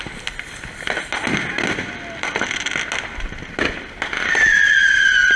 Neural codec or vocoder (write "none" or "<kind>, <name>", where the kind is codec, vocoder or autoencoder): none